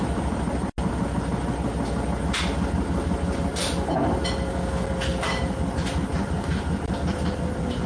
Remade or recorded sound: recorded